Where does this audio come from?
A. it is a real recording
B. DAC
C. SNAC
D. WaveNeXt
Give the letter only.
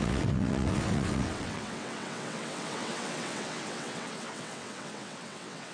D